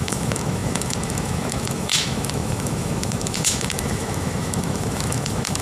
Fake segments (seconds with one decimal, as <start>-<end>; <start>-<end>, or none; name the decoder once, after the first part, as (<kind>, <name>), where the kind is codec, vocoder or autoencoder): 0.0-5.6 (autoencoder, DAC-VAE)